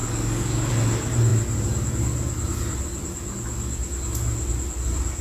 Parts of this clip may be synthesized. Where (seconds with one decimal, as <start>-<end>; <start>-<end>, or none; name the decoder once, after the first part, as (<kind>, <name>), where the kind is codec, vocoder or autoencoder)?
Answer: 0.0-0.7 (codec, DAC)

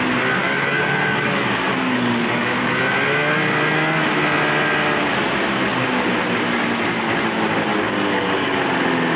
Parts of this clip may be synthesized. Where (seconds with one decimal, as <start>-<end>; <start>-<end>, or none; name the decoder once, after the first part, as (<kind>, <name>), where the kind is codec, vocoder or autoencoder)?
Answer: 0.4-2.8 (codec, DAC); 7.7-8.6

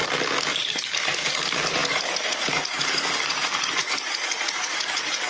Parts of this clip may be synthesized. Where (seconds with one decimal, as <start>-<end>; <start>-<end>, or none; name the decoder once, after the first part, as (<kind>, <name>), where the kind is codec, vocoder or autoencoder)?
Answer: 0.6-5.3 (codec, DAC)

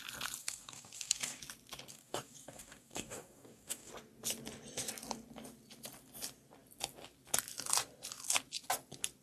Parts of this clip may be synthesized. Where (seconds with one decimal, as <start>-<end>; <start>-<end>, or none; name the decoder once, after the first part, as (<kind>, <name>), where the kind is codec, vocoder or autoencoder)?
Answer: 0.4-1.4 (codec, DAC); 1.9-3.9